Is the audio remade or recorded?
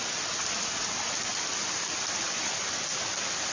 recorded